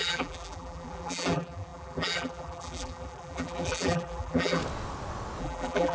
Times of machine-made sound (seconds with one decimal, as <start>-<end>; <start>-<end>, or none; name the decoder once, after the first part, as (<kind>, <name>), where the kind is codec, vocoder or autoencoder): 0.0-4.6 (vocoder, BigVGAN v2); 5.4-5.9